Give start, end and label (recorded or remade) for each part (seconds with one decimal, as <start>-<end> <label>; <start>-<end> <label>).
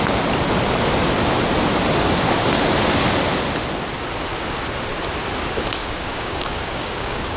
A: 0.0-5.8 recorded; 5.8-7.4 remade